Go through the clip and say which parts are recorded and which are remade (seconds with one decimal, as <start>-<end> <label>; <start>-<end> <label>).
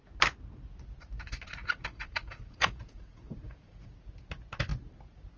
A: 0.0-1.6 recorded; 1.6-3.9 remade; 3.9-5.4 recorded